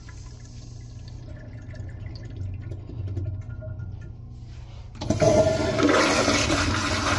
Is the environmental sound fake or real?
real